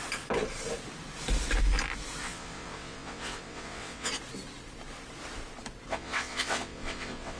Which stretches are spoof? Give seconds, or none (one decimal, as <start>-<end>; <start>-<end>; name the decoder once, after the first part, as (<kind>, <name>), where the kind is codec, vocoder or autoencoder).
2.2-4.1 (vocoder, WaveNeXt); 5.9-7.4